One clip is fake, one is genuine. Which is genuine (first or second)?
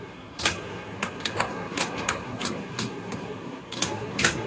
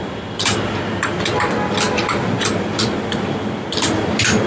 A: second